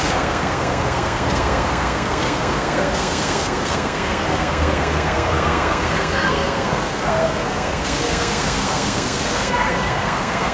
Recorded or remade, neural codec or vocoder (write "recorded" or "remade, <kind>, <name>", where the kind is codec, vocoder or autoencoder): remade, codec, SNAC